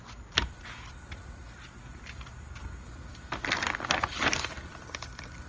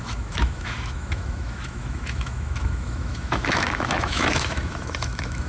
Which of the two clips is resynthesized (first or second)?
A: second